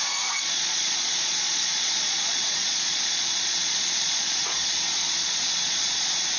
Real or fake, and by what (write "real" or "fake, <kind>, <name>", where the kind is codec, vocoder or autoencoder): fake, vocoder, Vocos